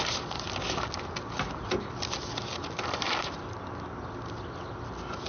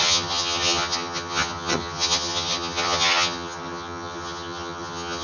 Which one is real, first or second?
first